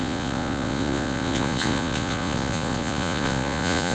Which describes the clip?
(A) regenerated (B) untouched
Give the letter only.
A